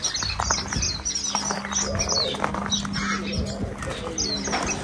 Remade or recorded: recorded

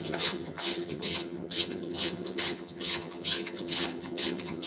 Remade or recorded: remade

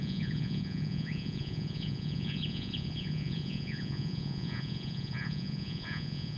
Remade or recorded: remade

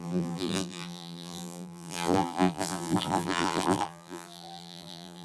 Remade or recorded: remade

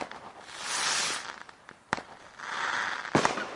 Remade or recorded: recorded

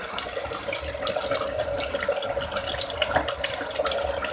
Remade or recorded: recorded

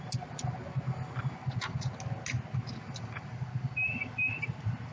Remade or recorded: recorded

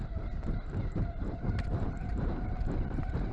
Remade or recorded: remade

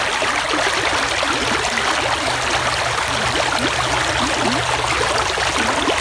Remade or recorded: recorded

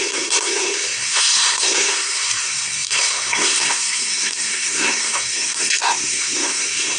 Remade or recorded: remade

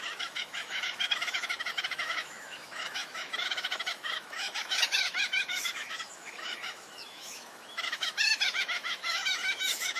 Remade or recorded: remade